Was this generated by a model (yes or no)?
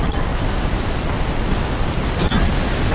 no